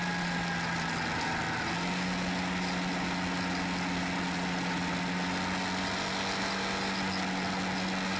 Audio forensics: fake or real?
real